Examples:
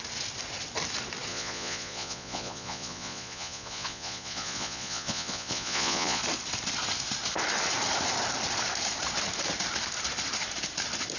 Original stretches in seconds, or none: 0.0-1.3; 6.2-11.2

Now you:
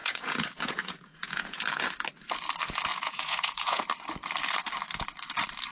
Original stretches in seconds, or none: 1.6-2.9; 3.8-5.7

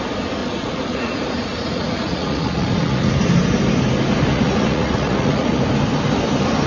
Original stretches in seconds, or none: 0.0-0.4; 3.1-4.3; 5.6-6.7

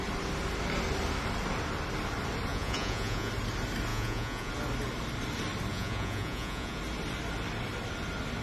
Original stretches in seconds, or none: 0.0-2.5; 3.3-3.9; 4.5-5.7; 6.8-8.4

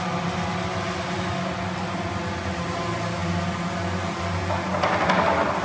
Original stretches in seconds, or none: 0.0-5.6

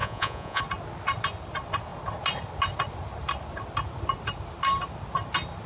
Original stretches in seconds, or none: 0.6-5.7